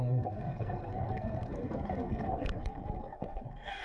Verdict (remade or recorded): remade